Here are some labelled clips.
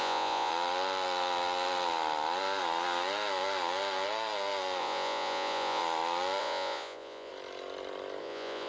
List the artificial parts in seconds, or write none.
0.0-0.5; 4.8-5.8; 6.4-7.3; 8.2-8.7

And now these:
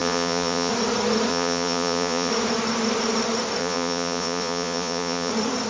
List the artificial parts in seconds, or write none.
0.0-0.7; 1.3-2.3; 3.6-5.3

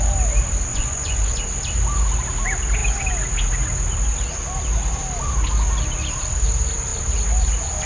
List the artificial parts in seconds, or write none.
0.7-1.4

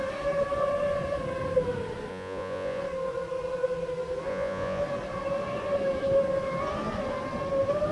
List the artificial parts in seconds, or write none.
2.1-2.8; 4.3-4.8

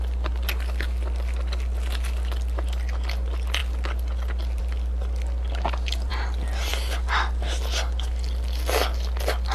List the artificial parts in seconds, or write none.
none

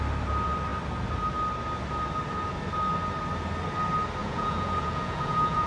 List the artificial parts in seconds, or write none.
4.2-5.7

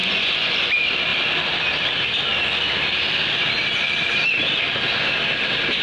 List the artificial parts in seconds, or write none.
0.0-0.7